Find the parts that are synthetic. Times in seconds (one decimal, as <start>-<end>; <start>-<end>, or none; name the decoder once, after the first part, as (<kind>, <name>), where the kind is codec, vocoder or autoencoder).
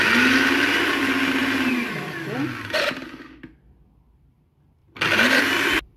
1.4-2.2 (vocoder, BigVGAN v2); 4.8-5.4